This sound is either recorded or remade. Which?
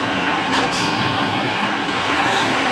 remade